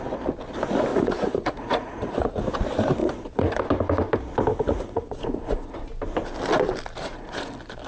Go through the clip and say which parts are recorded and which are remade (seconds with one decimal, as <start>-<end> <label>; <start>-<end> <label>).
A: 0.0-0.9 recorded; 0.9-2.4 remade; 2.4-3.0 recorded; 3.0-3.6 remade; 3.6-4.5 recorded; 4.5-5.8 remade; 5.8-7.0 recorded; 7.0-7.5 remade; 7.5-7.9 recorded